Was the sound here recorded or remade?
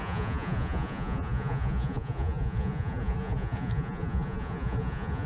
remade